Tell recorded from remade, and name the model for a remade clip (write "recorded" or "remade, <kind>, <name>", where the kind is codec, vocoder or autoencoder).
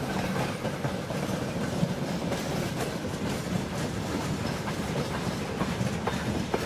remade, vocoder, BigVGAN v2